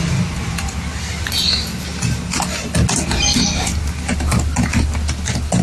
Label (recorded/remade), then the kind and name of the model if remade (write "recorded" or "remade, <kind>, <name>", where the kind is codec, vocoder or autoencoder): recorded